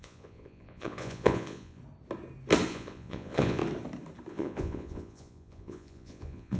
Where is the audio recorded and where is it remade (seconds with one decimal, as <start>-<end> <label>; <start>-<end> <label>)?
0.0-1.8 remade; 1.8-2.7 recorded; 2.7-3.6 remade; 3.6-4.3 recorded; 4.3-6.6 remade